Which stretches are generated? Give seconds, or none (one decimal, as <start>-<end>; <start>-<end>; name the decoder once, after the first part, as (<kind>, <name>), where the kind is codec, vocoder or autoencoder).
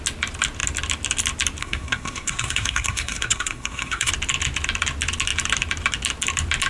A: 1.6-4.1 (codec, SNAC)